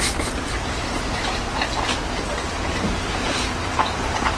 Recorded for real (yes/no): no